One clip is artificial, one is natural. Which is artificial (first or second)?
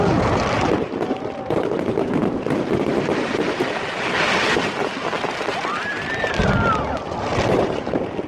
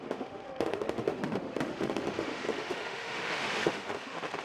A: second